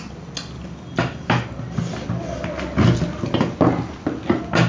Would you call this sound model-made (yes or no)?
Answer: no